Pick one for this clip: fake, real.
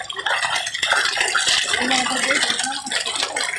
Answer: real